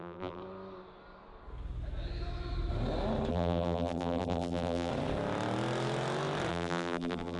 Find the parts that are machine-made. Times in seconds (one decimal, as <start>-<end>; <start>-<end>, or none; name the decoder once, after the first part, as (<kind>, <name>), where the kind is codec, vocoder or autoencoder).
0.0-0.4 (vocoder, BigVGAN v2); 3.3-4.9; 6.5-7.4

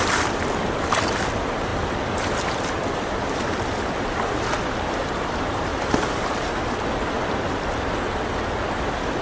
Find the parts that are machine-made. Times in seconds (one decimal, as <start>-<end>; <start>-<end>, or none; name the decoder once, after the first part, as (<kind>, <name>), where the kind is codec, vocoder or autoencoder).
0.0-5.7 (vocoder, BigVGAN v2); 8.7-9.2

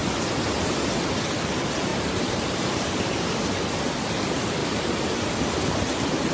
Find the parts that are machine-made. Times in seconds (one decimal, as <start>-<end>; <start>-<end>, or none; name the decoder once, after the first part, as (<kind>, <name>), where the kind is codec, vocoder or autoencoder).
1.9-3.5 (vocoder, BigVGAN v2); 4.6-5.4